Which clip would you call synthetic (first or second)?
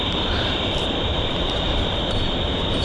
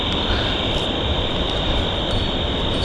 first